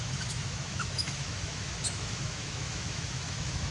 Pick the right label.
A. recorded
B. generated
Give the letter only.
B